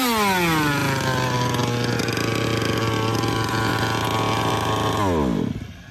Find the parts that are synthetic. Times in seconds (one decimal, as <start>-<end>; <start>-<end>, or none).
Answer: none